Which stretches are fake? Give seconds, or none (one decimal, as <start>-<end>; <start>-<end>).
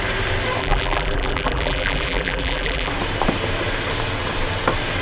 0.6-2.9